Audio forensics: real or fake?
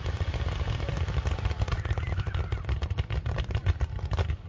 real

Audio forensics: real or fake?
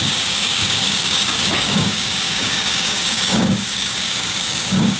fake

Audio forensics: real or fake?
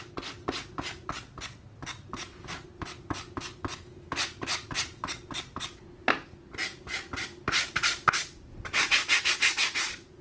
real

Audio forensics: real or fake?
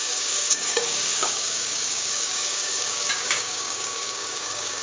fake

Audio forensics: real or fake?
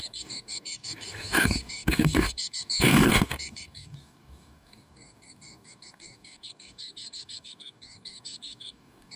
fake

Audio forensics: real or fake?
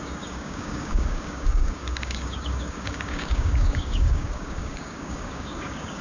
fake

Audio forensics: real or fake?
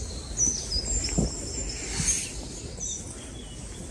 real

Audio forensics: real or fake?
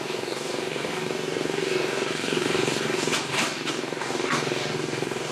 fake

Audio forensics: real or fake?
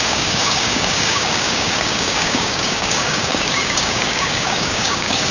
fake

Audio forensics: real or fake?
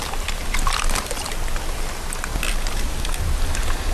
real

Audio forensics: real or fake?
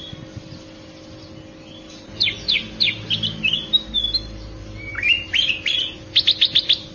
real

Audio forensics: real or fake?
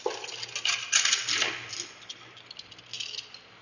real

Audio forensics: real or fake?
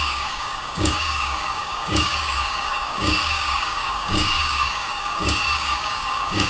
fake